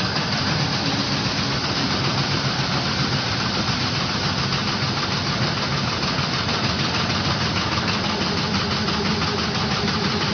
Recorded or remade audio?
recorded